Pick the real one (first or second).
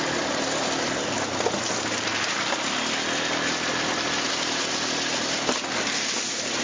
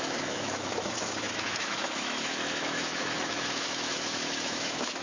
first